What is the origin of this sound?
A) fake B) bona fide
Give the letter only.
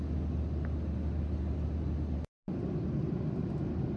B